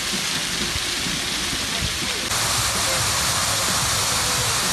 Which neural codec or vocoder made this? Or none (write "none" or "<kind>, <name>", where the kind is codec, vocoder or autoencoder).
none